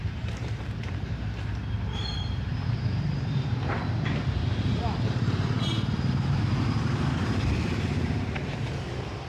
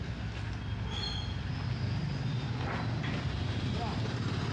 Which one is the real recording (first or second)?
second